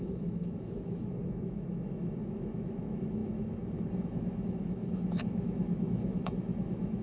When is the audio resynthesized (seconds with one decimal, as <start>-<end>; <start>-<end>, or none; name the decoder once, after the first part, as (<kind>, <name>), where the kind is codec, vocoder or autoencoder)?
0.0-7.0 (autoencoder, DAC-VAE)

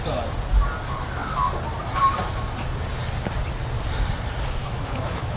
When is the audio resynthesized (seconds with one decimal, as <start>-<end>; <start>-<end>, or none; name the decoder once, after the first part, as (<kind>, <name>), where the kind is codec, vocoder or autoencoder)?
4.6-5.4 (autoencoder, DAC-VAE)

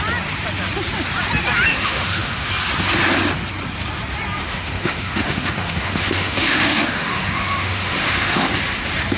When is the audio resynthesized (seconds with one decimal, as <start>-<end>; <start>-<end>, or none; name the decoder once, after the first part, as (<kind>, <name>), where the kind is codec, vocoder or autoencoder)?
1.7-2.5 (autoencoder, DAC-VAE); 4.4-8.5

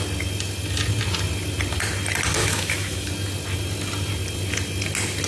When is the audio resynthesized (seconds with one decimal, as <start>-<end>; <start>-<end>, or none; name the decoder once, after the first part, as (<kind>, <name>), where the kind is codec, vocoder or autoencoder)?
2.4-3.1 (autoencoder, DAC-VAE)

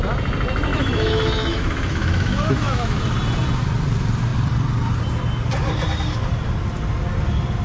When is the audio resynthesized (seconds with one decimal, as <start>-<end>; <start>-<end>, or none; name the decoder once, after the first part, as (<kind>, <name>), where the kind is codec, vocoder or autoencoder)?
0.7-3.0 (autoencoder, DAC-VAE)

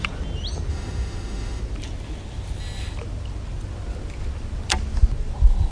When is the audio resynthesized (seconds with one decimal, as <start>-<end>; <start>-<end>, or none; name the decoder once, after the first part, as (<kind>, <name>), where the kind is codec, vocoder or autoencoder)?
0.7-1.6 (autoencoder, DAC-VAE)